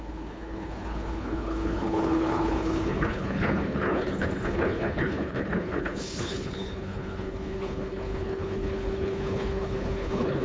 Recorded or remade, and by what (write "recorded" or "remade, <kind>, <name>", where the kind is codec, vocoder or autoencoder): remade, codec, HILCodec